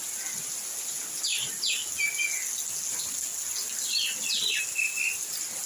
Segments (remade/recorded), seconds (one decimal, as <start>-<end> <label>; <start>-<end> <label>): 0.0-5.7 recorded